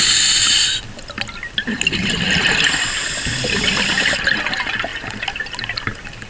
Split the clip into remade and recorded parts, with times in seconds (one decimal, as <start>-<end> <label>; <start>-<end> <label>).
0.0-6.3 recorded